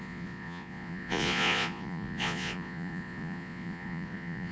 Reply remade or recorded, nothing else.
remade